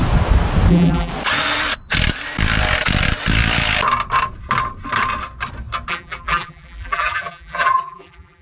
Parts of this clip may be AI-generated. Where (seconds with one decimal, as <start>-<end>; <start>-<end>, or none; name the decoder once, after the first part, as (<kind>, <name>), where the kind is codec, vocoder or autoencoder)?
0.7-1.1 (vocoder, BigVGAN v2); 5.9-8.4